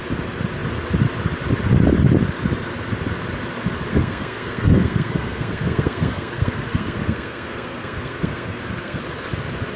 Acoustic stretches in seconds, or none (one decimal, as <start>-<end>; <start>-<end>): 0.0-3.9; 9.0-9.8